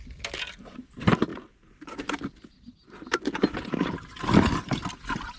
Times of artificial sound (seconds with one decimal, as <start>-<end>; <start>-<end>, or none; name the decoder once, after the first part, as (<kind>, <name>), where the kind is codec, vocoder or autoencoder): none